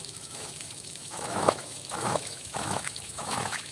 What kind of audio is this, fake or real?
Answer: fake